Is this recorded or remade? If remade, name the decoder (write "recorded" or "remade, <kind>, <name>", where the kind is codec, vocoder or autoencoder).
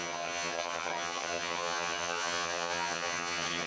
remade, vocoder, HiFi-GAN